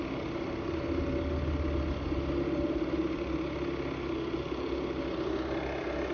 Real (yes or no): yes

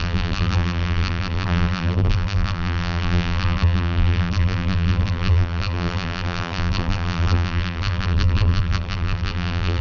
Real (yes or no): no